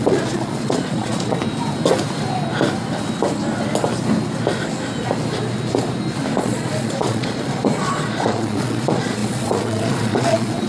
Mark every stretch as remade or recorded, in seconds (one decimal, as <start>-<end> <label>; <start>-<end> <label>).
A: 0.0-1.4 remade; 1.4-6.4 recorded; 6.4-10.7 remade